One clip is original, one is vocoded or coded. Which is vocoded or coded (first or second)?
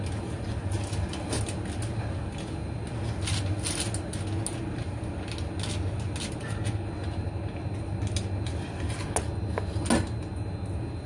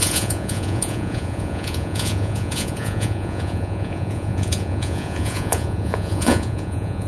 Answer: second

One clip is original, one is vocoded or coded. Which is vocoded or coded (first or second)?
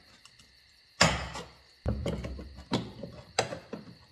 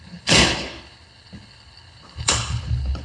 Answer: second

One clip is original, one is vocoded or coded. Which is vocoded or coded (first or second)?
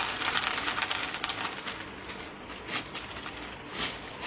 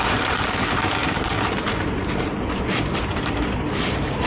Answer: second